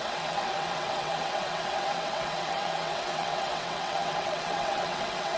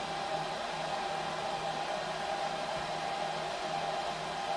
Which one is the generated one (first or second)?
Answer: first